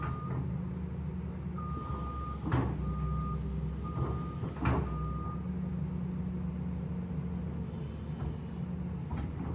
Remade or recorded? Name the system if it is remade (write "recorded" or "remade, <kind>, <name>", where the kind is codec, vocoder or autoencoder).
recorded